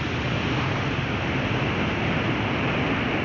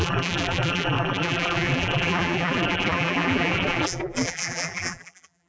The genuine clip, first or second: first